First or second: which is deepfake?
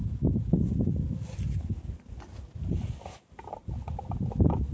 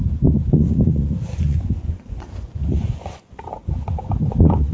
second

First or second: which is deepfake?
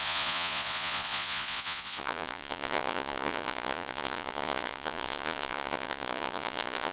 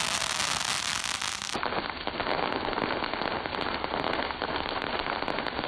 first